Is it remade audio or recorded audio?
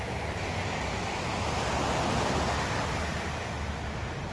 recorded